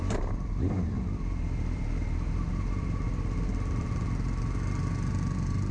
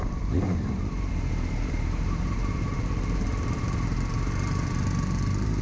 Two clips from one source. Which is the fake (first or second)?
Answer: second